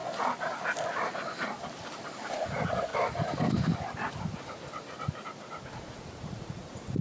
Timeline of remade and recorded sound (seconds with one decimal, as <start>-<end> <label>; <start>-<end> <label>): 0.0-2.3 recorded; 2.3-2.9 remade; 2.9-5.7 recorded; 5.7-7.0 remade